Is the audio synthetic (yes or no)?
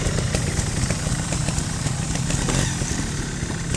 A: no